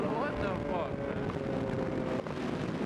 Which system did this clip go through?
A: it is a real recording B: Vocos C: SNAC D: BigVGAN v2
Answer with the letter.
A